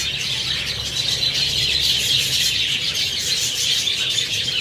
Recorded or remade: recorded